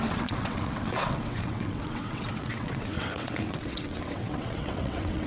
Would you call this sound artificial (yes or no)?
yes